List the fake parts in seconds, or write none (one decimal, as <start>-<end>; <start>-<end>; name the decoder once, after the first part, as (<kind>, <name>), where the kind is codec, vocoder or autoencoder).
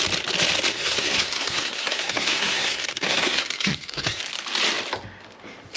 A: 0.7-4.2 (codec, SNAC)